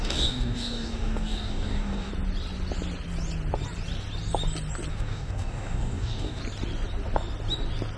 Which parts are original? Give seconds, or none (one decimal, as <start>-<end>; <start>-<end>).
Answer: 2.1-4.9; 6.4-8.0